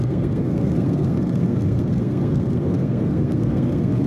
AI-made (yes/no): yes